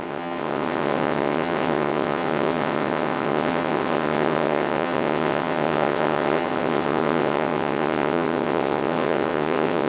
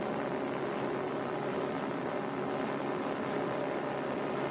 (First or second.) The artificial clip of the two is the first